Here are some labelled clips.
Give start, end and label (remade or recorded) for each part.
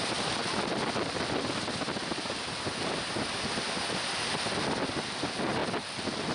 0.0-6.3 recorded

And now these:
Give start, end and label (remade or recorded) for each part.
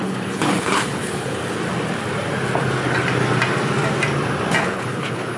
0.0-1.4 remade; 1.4-4.6 recorded; 4.6-5.4 remade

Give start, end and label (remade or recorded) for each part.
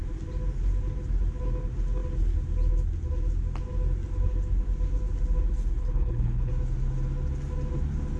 0.0-5.8 recorded; 5.8-6.5 remade; 6.5-8.2 recorded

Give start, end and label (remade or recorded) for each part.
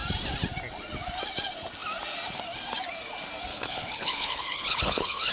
0.0-3.5 recorded; 3.5-5.3 remade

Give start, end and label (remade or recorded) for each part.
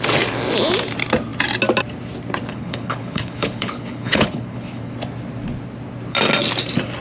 0.0-2.5 recorded; 2.5-4.9 remade; 4.9-7.0 recorded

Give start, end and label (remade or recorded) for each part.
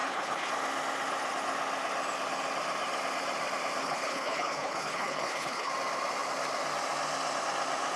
0.0-0.5 remade; 0.5-3.8 recorded; 3.8-5.7 remade; 5.7-8.0 recorded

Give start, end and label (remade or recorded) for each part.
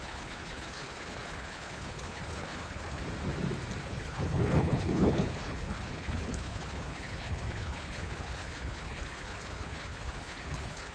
0.0-3.0 remade; 3.0-3.8 recorded; 3.8-10.9 remade